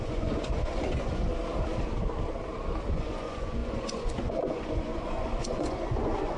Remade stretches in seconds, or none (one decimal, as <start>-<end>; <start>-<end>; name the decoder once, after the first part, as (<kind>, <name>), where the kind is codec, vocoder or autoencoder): 0.0-1.3 (vocoder, Vocos); 2.9-6.4